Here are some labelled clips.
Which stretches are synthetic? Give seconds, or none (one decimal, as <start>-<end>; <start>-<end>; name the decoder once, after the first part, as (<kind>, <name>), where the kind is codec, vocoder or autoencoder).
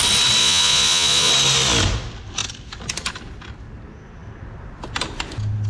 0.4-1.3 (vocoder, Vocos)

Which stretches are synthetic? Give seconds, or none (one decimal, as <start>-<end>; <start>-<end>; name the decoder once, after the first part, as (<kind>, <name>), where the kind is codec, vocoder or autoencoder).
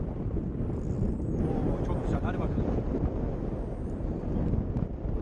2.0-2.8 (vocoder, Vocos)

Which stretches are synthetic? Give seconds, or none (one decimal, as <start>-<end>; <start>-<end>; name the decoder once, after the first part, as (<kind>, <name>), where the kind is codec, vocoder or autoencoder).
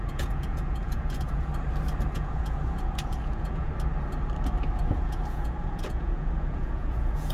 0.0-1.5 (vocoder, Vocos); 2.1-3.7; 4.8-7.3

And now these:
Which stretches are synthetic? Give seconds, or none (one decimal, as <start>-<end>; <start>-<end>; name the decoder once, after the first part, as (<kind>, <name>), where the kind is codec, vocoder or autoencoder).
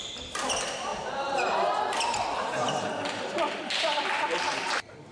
none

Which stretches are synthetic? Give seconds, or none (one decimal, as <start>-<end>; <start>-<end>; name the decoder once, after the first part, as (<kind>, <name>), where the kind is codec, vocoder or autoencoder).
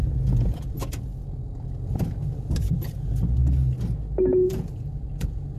0.0-1.1 (vocoder, Vocos); 4.5-5.6